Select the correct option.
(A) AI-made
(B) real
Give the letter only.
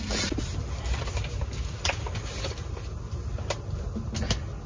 B